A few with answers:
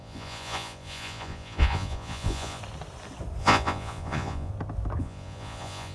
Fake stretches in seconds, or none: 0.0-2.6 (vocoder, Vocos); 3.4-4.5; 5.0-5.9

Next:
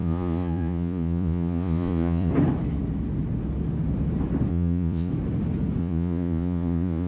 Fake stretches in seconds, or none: 0.0-2.3 (vocoder, Vocos); 4.5-5.1; 5.8-7.1